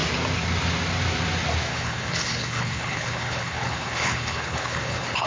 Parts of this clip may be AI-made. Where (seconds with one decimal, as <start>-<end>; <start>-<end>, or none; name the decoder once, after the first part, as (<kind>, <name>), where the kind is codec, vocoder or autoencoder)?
1.7-5.3 (codec, HILCodec)